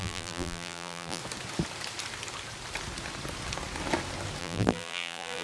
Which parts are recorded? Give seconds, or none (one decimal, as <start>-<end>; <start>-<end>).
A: 1.2-4.4